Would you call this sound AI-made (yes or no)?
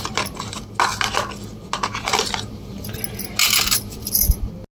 no